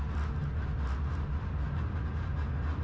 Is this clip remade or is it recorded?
recorded